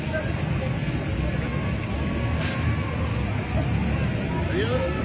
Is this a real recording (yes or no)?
yes